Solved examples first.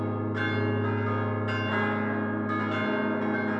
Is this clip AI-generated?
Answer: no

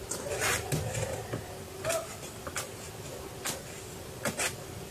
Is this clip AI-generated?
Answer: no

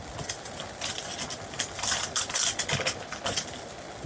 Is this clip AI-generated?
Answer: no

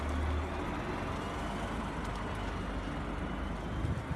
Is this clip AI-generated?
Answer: no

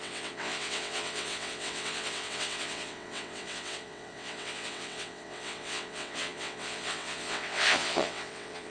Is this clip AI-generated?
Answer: yes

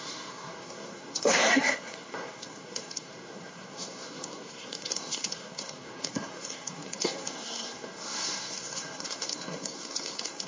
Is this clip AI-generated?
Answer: yes